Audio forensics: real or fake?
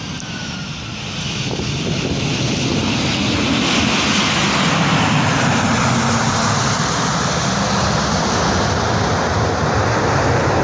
real